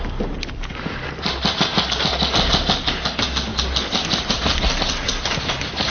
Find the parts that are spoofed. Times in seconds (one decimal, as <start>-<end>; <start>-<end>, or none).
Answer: none